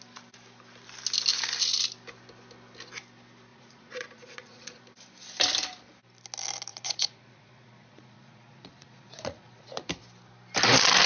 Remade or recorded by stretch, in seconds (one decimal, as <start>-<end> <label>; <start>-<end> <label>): 0.0-3.5 recorded; 3.5-4.8 remade; 4.8-6.7 recorded; 6.7-9.9 remade; 9.9-11.1 recorded